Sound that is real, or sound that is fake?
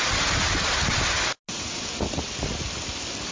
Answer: real